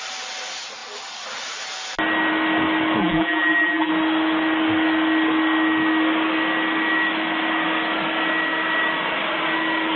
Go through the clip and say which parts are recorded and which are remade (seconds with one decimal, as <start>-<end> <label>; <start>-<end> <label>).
0.0-3.0 recorded; 3.0-3.9 remade; 3.9-10.0 recorded